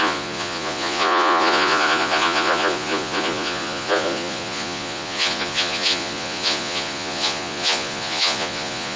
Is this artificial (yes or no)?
yes